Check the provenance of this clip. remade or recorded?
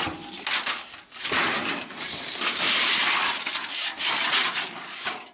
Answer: recorded